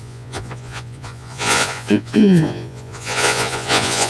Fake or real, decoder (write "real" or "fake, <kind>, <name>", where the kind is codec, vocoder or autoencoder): fake, vocoder, Vocos